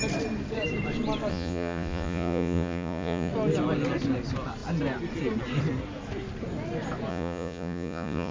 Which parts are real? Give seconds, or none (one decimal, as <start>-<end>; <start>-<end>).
0.0-1.3; 3.3-7.1